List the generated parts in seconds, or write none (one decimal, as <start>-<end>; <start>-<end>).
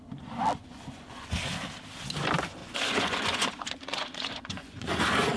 0.6-1.4; 2.6-5.0